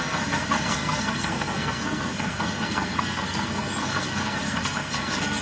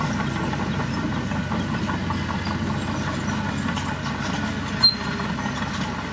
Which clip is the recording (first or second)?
second